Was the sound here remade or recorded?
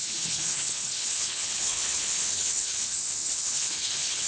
remade